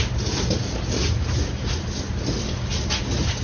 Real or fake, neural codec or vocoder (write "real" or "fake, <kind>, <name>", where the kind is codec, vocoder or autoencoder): real